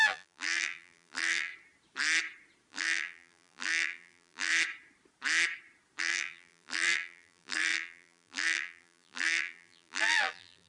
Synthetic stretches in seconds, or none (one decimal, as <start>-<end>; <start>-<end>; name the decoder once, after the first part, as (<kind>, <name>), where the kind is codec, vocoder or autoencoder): 0.0-1.5 (vocoder, BigVGAN v2); 2.7-4.5; 6.0-10.7